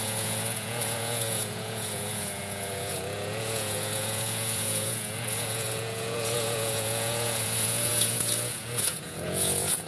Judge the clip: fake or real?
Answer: fake